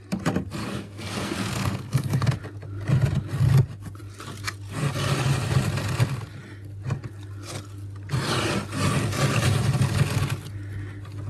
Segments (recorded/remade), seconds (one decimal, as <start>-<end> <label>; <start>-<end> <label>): 0.0-0.6 recorded; 0.6-2.3 remade; 2.3-11.3 recorded